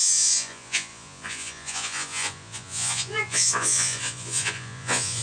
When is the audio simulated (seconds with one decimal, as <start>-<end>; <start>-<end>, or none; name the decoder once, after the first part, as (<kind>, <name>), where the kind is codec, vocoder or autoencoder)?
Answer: 0.0-5.2 (vocoder, Vocos)